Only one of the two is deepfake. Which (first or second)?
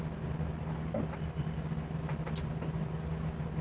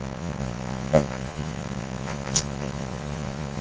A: second